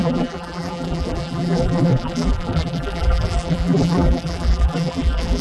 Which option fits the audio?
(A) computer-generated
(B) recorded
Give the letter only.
A